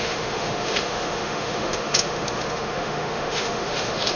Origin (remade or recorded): remade